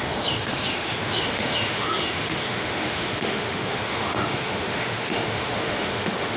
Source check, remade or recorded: remade